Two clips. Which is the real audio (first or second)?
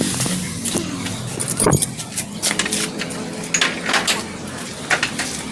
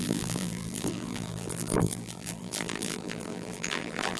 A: first